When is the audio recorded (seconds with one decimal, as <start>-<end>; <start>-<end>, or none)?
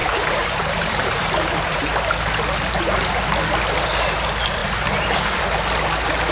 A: 2.0-4.6; 5.4-6.3